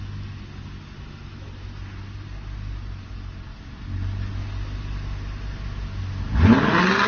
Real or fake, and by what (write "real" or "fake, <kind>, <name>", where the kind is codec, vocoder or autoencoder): real